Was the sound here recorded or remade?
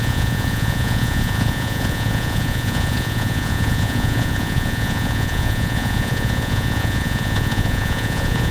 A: remade